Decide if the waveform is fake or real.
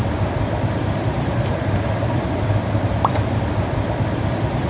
fake